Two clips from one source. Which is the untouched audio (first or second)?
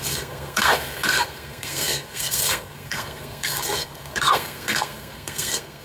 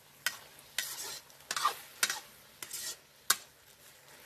second